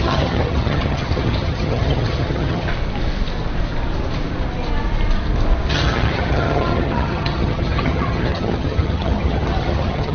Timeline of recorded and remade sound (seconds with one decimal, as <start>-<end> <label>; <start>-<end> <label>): 0.0-2.7 remade; 2.7-5.7 recorded; 5.7-10.1 remade